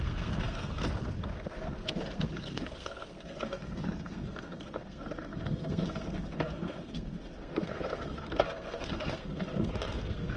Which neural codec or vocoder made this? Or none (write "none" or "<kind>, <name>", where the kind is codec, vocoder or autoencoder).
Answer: codec, SNAC